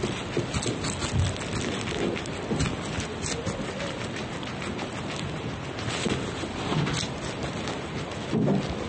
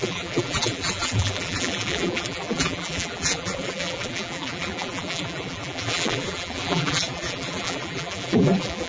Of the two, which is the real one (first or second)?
first